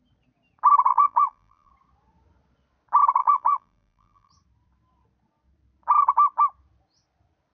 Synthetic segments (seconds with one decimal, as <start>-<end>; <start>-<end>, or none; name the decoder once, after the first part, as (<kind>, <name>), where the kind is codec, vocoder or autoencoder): 0.9-1.7 (vocoder, BigVGAN v2); 3.2-4.3